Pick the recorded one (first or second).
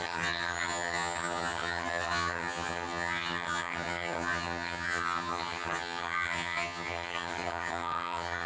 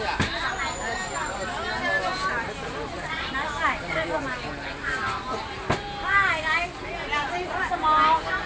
second